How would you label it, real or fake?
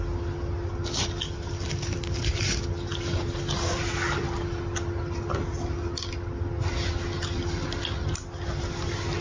real